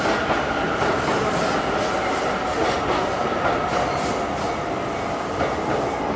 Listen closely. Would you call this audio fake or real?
real